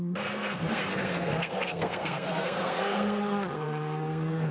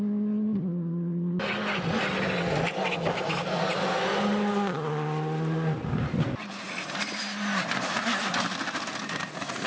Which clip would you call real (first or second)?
second